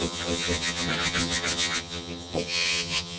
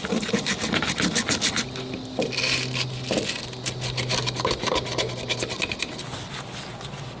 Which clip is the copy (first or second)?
first